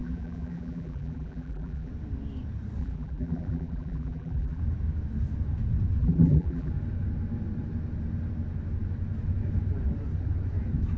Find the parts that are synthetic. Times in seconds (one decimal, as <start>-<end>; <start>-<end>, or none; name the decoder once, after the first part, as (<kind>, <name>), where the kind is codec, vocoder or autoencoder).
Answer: 0.0-1.9 (vocoder, BigVGAN v2); 2.8-4.6; 6.0-6.7